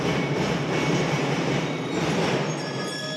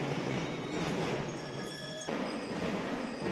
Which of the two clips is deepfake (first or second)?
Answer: second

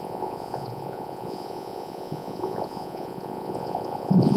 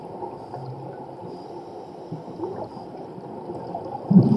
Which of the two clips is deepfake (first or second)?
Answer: first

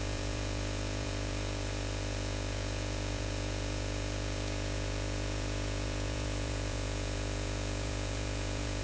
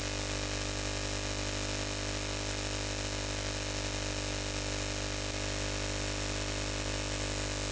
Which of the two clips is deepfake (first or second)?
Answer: first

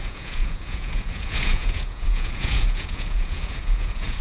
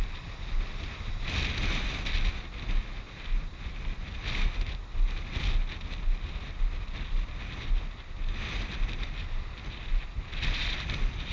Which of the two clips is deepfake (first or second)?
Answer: first